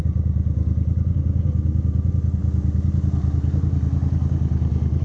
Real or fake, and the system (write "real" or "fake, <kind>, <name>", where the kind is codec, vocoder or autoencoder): real